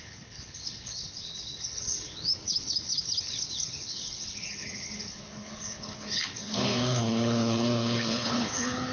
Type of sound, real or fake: fake